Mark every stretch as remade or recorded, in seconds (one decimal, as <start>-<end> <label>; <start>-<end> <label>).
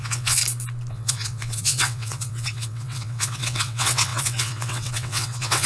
0.0-0.4 remade; 0.4-0.9 recorded; 0.9-5.7 remade